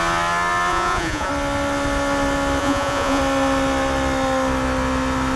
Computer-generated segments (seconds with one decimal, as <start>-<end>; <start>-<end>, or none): 0.7-1.3; 2.6-3.2